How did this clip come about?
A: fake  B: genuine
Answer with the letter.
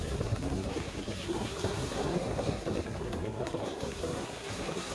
A